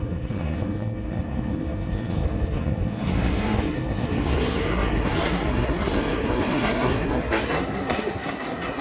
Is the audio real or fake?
fake